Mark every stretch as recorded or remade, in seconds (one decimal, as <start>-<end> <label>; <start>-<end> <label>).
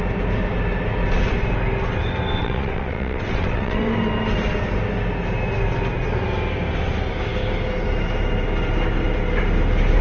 0.0-2.4 recorded; 2.4-3.8 remade; 3.8-10.0 recorded